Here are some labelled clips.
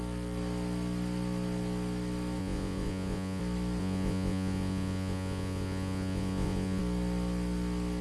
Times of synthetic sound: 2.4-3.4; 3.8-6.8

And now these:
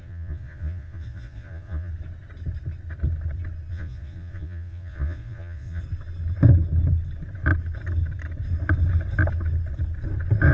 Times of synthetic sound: 0.0-1.9; 3.7-5.8